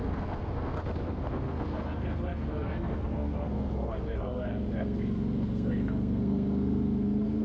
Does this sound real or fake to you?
fake